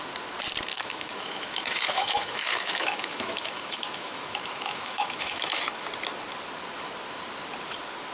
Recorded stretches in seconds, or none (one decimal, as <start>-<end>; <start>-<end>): 0.0-0.7; 5.6-8.1